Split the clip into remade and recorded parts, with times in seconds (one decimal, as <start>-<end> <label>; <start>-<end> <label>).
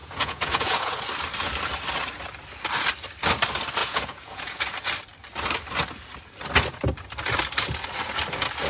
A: 0.0-1.0 remade; 1.0-3.8 recorded; 3.8-4.6 remade; 4.6-8.7 recorded